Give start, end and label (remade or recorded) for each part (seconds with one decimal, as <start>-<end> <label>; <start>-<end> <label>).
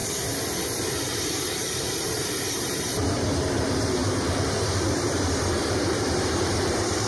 0.0-1.2 recorded; 1.2-4.0 remade; 4.0-4.9 recorded; 4.9-7.1 remade